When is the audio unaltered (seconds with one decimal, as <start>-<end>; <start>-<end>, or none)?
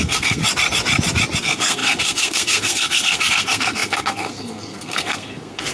0.4-1.4